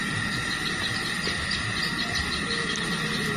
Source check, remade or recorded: recorded